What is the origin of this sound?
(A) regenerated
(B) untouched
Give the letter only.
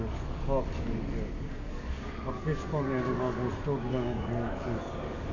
A